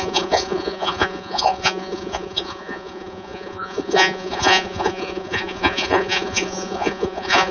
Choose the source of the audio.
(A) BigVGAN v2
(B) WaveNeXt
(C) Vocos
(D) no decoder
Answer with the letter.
C